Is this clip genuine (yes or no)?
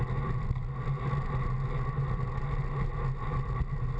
yes